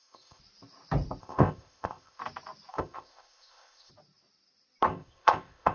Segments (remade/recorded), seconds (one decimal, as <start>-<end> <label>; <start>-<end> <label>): 0.0-0.4 remade; 0.4-1.2 recorded; 1.2-2.2 remade; 2.2-2.7 recorded; 2.7-3.9 remade; 3.9-4.9 recorded; 4.9-5.7 remade